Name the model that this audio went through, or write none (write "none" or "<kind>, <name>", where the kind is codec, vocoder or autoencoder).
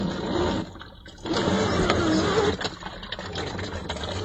none